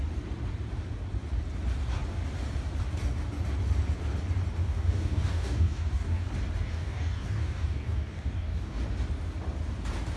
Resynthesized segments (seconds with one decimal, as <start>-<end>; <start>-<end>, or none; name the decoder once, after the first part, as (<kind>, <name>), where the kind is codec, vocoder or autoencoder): 4.6-6.2 (codec, DAC); 6.7-8.8